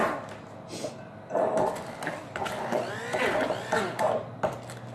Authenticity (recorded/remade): recorded